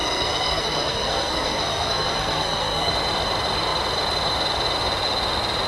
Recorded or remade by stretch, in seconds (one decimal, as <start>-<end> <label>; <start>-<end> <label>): 0.0-2.9 remade; 2.9-5.7 recorded

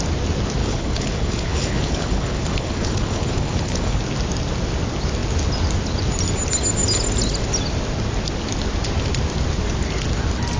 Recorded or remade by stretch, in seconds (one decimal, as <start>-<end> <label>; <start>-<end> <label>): 0.0-0.6 recorded; 0.6-4.0 remade; 4.0-10.6 recorded

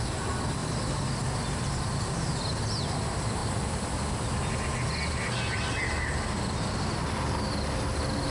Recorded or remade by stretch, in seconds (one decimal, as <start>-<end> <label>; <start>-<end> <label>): 0.0-8.3 recorded